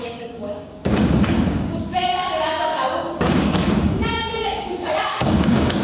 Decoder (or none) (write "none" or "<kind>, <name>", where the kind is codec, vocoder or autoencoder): codec, DAC